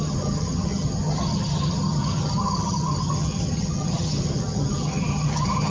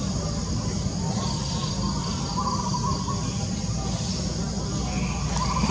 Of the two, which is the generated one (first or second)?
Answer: first